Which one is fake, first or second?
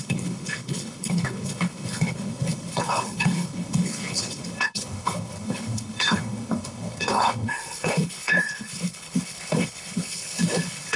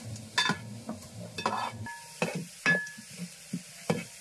first